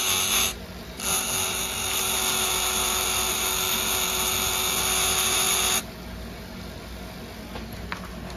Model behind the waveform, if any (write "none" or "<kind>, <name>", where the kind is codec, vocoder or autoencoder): none